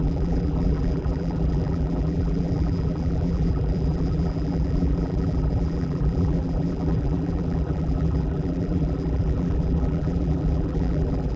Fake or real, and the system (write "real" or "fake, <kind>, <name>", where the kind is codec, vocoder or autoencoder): fake, vocoder, BigVGAN v2